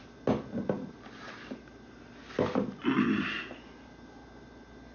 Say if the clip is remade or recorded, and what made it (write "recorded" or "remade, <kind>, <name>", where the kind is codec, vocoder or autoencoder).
recorded